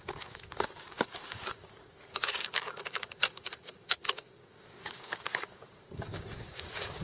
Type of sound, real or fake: fake